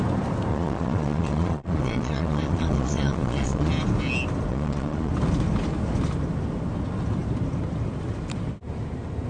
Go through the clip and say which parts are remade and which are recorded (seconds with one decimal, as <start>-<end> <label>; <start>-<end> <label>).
0.0-0.5 recorded; 0.5-3.7 remade; 3.7-4.5 recorded; 4.5-5.1 remade; 5.1-9.3 recorded